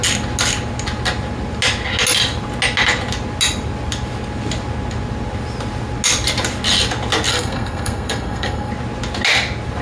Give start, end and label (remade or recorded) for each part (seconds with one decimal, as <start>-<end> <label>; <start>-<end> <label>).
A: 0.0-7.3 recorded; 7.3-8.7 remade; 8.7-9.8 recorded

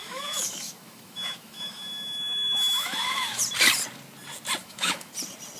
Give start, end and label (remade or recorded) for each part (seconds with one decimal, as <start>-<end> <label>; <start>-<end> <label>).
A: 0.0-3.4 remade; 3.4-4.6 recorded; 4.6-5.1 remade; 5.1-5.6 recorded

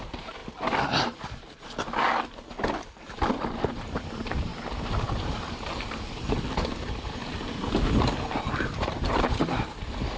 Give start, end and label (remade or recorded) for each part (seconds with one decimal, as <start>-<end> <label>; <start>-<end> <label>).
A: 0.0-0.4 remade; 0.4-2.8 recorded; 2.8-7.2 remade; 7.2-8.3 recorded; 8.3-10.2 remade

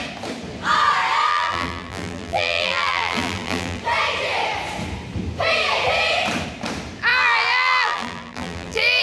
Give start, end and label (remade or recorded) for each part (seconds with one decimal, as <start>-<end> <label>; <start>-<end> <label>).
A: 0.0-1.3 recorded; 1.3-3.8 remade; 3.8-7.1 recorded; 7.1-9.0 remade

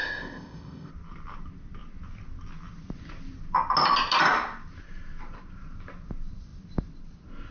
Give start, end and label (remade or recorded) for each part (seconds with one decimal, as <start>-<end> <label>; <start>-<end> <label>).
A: 0.0-0.9 remade; 0.9-7.5 recorded